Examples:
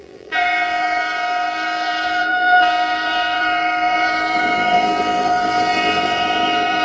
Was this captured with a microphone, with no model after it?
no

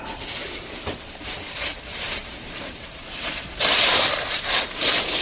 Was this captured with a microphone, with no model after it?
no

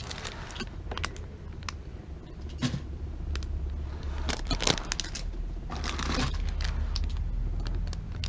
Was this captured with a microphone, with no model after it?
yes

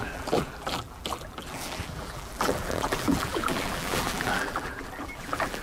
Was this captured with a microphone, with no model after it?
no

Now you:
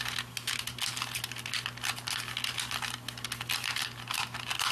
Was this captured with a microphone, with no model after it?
yes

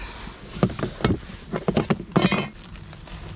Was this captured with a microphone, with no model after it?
yes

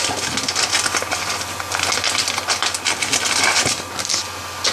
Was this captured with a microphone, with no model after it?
yes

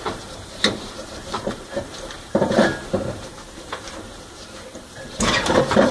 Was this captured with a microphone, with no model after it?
no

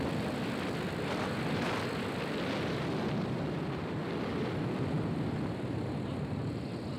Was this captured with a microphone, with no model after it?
no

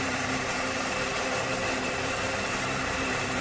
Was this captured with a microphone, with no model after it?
no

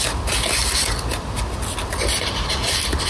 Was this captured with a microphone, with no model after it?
yes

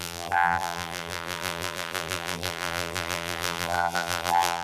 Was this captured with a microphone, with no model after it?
no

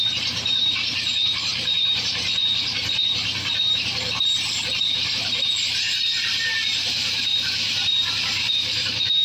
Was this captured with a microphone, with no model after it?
no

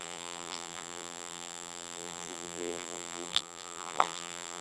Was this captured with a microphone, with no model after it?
no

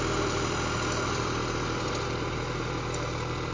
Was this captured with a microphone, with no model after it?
no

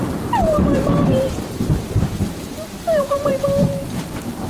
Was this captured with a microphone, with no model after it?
no